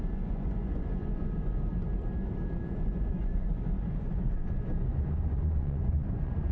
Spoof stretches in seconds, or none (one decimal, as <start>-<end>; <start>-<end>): 0.0-1.7; 2.7-6.5